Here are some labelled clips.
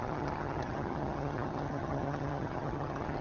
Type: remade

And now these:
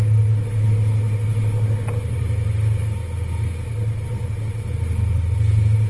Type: recorded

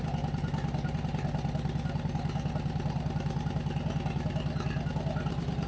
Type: recorded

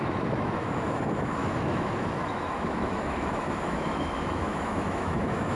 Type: remade